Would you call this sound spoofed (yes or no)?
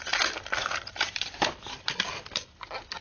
no